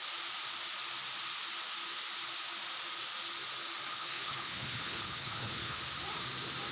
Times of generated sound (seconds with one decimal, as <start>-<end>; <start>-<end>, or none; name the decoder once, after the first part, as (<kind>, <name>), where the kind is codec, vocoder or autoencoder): 3.9-5.8 (codec, HILCodec)